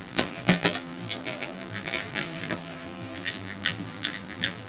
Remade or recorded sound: remade